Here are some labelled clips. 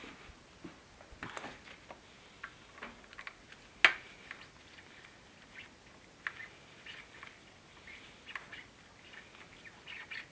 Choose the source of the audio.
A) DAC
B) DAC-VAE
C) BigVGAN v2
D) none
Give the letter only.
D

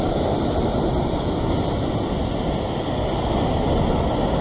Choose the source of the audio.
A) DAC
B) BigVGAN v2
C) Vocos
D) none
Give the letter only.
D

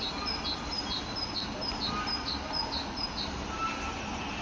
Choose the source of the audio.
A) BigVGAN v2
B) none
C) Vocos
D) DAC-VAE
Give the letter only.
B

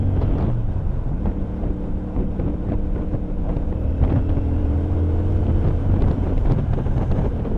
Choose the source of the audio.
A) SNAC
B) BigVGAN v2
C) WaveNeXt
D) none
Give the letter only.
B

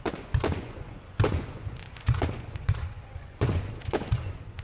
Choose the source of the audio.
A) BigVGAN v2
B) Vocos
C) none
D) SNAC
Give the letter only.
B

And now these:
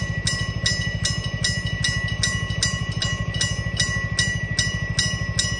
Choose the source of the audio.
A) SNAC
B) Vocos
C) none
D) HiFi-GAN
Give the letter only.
C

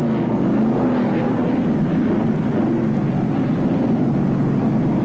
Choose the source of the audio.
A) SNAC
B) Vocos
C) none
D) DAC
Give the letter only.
C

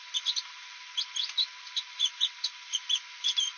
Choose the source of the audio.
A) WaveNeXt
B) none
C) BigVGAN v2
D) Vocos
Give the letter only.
C